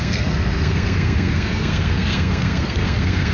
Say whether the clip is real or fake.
fake